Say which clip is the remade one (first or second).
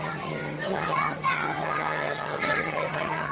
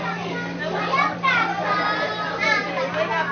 first